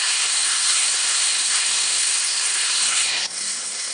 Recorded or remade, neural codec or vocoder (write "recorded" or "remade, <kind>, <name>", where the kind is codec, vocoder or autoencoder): remade, codec, SNAC